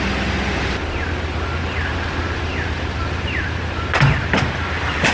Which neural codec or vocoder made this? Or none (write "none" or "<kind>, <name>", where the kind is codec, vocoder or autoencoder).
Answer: none